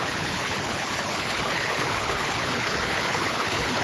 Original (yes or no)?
no